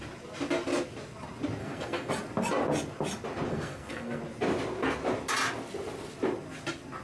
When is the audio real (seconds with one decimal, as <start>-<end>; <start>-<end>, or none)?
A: 0.0-1.6; 2.1-3.5; 4.2-7.0